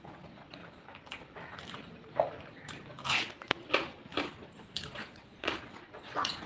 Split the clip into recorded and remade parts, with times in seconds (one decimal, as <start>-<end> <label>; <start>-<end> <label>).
0.0-0.6 remade; 0.6-3.1 recorded; 3.1-3.9 remade; 3.9-4.6 recorded; 4.6-6.5 remade